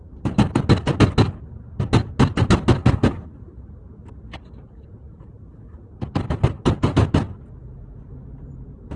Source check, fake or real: real